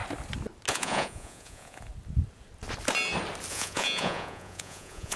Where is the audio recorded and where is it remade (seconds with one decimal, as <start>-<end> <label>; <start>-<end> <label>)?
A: 0.0-0.7 recorded; 0.7-1.9 remade; 1.9-3.5 recorded; 3.5-5.2 remade